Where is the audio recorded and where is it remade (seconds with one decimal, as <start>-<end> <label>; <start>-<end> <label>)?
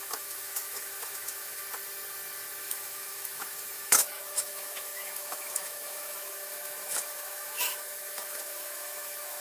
0.0-1.6 remade; 1.6-2.6 recorded; 2.6-9.4 remade